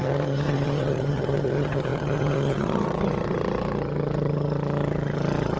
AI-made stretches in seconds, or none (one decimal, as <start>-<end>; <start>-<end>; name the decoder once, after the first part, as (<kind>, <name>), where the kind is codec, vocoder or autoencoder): 0.0-5.6 (vocoder, HiFi-GAN)